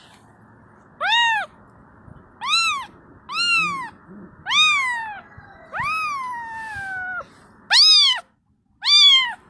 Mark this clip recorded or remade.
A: recorded